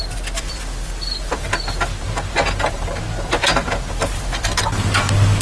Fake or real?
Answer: real